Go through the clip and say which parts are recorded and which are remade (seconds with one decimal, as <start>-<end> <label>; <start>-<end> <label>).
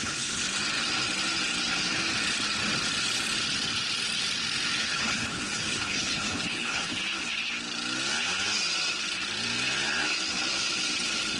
0.0-0.4 remade; 0.4-4.8 recorded; 4.8-7.0 remade; 7.0-11.4 recorded